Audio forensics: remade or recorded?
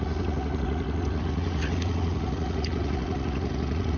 remade